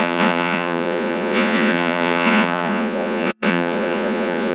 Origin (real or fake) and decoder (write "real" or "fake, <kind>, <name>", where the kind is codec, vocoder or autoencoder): fake, vocoder, Vocos